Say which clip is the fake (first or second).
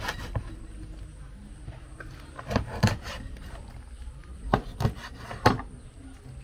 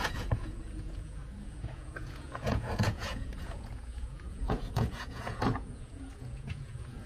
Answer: second